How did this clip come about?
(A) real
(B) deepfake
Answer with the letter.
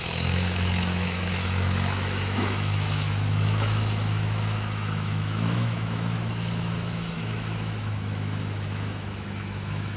B